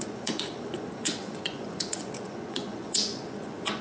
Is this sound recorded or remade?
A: remade